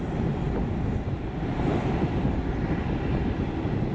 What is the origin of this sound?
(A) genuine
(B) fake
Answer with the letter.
A